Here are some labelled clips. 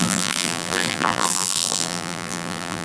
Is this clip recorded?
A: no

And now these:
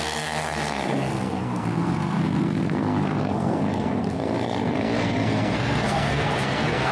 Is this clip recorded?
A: no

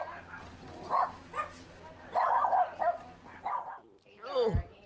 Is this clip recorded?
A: yes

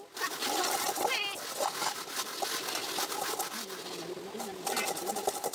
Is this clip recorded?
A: yes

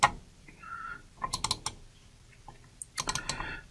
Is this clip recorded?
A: yes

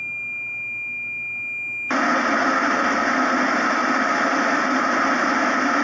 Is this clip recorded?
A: yes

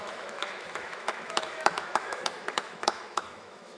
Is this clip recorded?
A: no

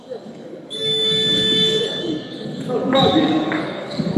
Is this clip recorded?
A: no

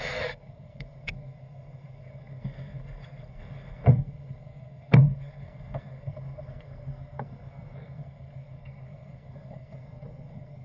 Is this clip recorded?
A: no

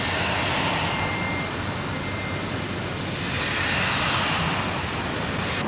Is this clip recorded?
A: yes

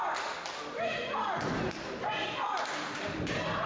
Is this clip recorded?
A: no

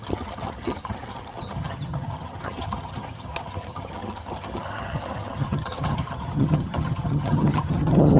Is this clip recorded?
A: no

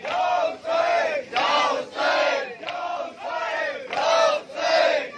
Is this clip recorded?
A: no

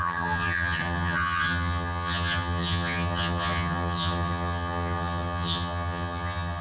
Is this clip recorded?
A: no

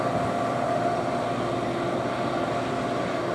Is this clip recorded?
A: yes